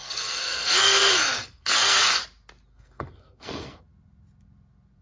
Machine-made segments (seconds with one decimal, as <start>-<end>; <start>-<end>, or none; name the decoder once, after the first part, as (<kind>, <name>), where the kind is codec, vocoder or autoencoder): 0.0-2.2 (codec, SNAC); 2.7-3.8